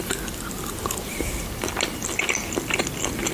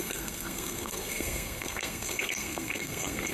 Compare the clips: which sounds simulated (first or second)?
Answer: second